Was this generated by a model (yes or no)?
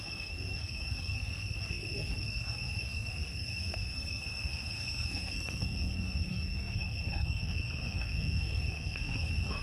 yes